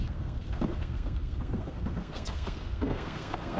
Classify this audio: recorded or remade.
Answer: remade